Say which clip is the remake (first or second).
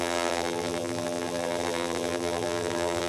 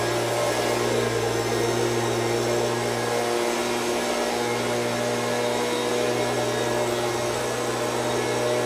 first